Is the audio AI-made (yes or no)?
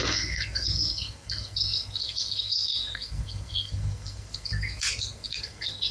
yes